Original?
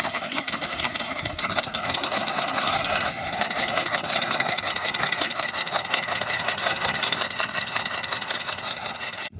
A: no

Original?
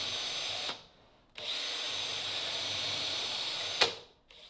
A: yes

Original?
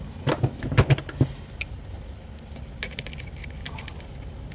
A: yes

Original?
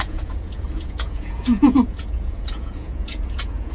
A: no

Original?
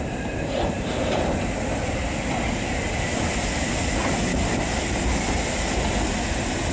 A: yes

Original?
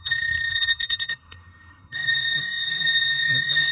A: no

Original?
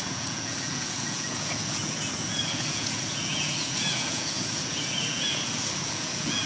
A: no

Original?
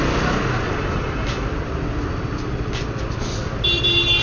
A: yes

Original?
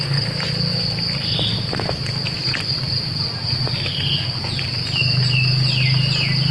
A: yes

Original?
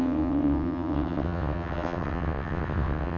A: no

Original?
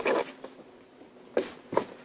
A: yes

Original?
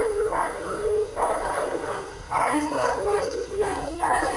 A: no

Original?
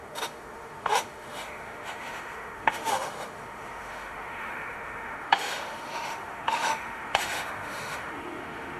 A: no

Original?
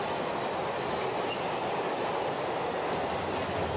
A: yes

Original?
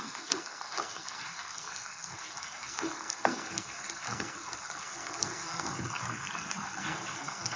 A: no